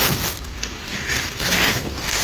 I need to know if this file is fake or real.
fake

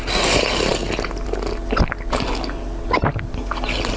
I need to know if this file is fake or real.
real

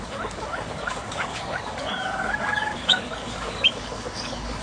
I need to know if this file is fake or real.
fake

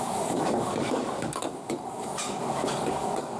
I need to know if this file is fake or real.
fake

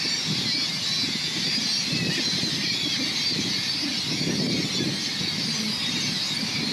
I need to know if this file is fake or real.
real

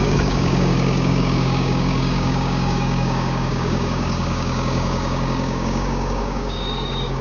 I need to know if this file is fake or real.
fake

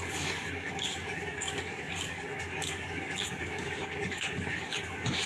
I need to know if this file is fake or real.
fake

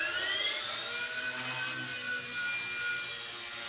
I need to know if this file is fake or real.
real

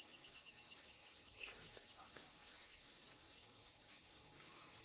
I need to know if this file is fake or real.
fake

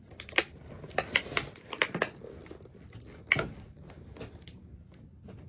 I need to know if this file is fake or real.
real